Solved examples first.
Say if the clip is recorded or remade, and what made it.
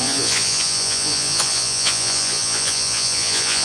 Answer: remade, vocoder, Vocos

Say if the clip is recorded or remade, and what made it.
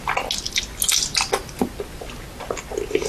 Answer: recorded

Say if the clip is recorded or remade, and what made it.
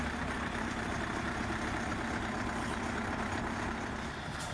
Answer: remade, vocoder, BigVGAN v2